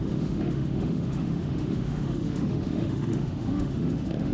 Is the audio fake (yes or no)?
yes